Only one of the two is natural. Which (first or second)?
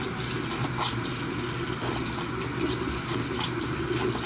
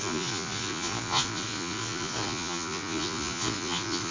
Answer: first